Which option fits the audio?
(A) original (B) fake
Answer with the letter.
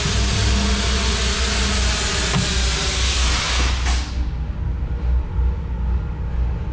A